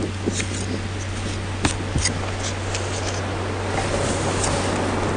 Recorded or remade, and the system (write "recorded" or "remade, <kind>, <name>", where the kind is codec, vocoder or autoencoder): recorded